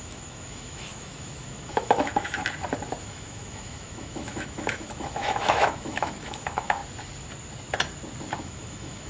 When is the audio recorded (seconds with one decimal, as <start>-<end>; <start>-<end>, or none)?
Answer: 2.4-3.0; 6.8-8.4